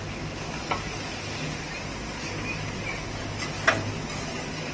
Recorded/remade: recorded